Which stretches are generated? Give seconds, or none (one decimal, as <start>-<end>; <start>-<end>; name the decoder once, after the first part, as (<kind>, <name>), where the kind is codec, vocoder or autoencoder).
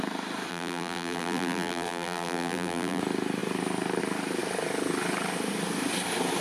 0.5-3.0 (vocoder, BigVGAN v2)